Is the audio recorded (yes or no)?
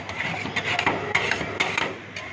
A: yes